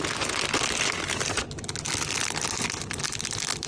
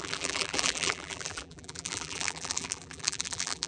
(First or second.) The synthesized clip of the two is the second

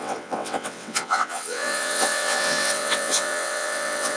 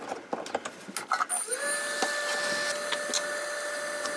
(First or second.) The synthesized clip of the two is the first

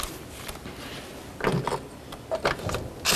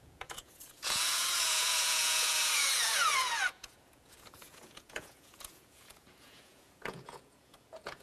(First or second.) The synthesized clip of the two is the second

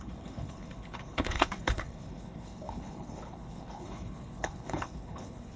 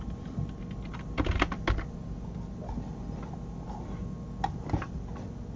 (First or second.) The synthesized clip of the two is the first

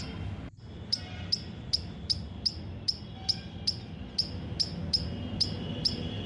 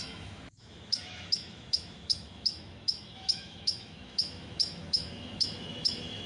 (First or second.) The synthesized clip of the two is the second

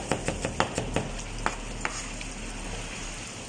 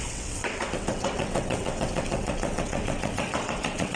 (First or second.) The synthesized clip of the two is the second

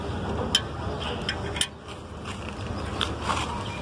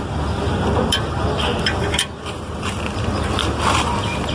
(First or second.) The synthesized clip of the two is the second